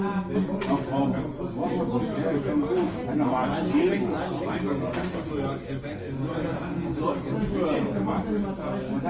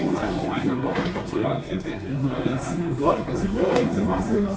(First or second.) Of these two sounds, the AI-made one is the second